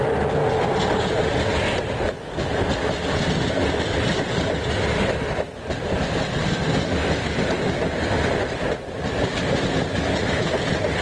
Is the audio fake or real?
real